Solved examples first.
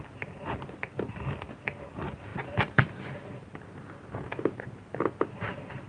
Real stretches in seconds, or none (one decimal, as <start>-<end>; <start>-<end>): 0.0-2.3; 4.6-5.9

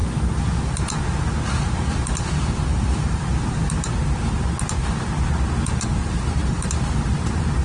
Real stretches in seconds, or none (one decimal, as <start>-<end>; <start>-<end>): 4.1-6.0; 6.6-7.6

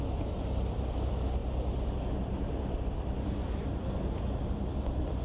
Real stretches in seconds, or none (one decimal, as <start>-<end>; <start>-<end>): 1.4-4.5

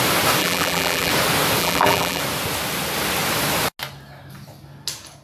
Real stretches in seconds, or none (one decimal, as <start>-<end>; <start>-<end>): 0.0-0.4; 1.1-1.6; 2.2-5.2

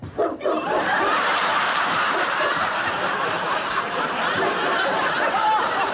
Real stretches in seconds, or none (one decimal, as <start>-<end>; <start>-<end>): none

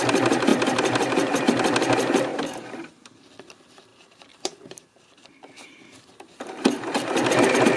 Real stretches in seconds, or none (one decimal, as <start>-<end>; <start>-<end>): 0.0-0.5; 1.4-2.3; 3.3-3.9; 6.8-7.8